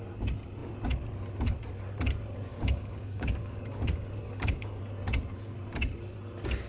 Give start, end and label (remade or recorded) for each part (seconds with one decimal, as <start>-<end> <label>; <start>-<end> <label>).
0.0-2.5 recorded; 2.5-4.8 remade; 4.8-6.7 recorded